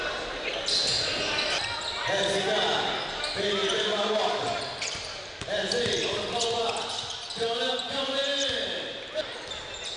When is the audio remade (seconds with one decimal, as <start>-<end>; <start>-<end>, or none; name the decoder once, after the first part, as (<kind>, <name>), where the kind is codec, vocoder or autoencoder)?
3.6-6.2 (vocoder, BigVGAN v2)